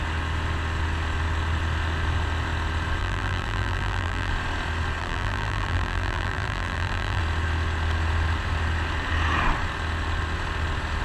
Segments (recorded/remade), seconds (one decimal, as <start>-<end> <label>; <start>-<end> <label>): 0.0-3.0 recorded; 3.0-4.3 remade; 4.3-5.0 recorded; 5.0-7.2 remade; 7.2-11.0 recorded